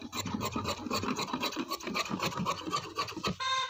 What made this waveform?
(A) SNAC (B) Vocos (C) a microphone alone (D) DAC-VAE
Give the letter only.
C